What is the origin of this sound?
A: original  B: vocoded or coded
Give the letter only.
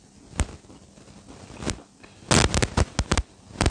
A